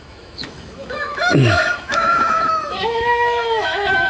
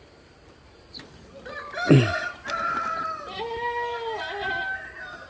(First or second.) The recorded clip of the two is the second